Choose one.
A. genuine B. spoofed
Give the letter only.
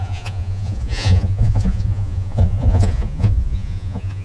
B